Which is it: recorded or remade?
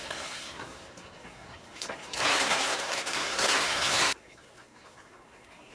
remade